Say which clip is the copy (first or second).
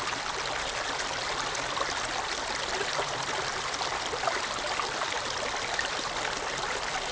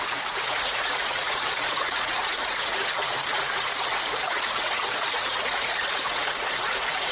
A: second